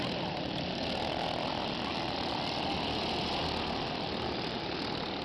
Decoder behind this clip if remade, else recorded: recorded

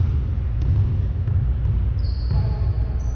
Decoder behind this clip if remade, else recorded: recorded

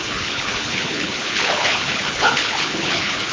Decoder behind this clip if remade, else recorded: remade, codec, HILCodec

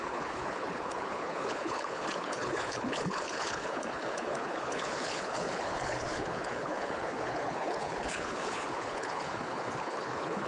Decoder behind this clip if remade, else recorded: remade, codec, HILCodec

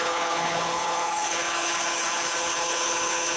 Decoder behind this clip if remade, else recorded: remade, codec, HILCodec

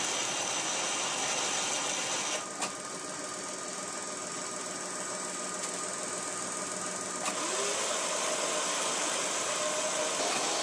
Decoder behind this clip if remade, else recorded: recorded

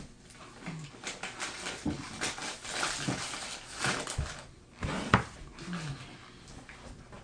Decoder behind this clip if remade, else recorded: recorded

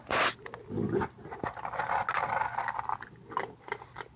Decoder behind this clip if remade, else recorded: recorded